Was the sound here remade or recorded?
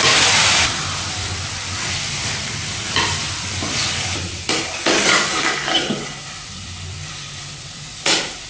remade